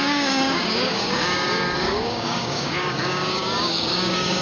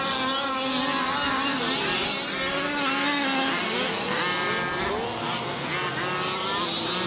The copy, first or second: first